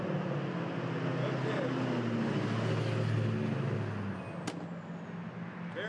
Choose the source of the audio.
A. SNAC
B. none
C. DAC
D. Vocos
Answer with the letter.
B